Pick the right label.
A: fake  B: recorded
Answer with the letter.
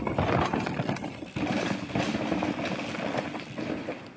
B